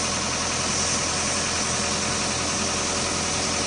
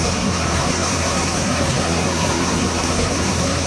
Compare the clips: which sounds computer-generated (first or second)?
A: second